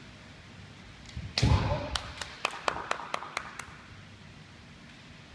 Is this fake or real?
real